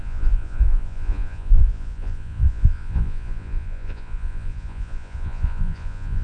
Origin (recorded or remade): remade